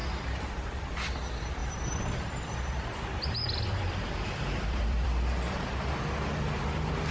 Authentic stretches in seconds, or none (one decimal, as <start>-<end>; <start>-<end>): 0.9-1.6; 5.9-7.1